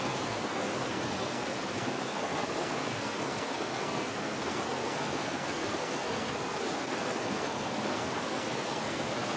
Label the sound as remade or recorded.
remade